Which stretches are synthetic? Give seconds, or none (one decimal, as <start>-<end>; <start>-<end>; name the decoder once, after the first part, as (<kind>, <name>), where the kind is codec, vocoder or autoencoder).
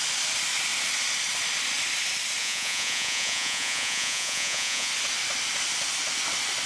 2.4-4.9 (vocoder, Vocos)